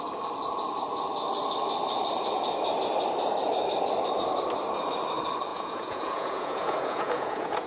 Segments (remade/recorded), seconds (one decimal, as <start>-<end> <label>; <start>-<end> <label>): 0.0-5.5 recorded; 5.5-7.7 remade